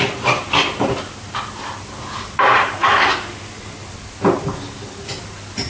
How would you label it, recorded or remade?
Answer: recorded